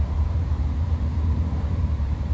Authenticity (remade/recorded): remade